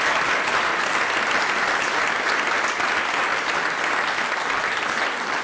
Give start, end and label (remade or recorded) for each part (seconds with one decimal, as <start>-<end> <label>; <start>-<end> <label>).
0.0-5.4 recorded